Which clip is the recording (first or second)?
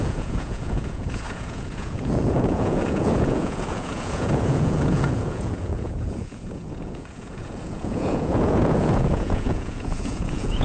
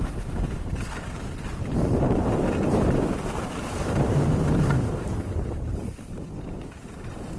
second